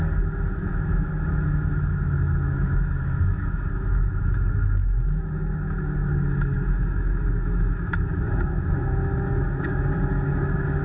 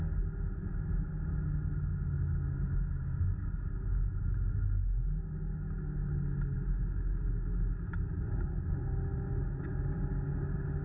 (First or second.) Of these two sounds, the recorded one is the second